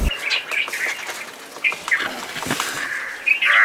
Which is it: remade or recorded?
recorded